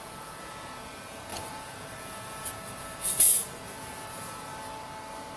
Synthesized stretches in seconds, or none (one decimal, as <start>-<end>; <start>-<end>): 0.0-4.5